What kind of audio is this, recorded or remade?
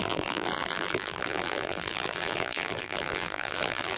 remade